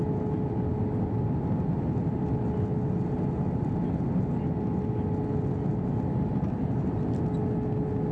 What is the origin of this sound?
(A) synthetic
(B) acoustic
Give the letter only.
B